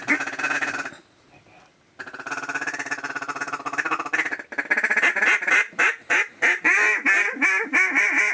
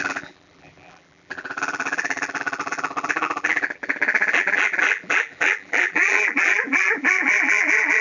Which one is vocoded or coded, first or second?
second